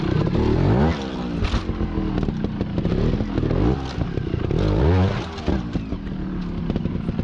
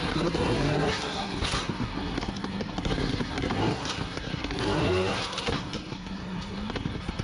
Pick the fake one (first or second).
second